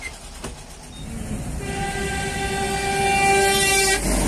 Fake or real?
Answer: real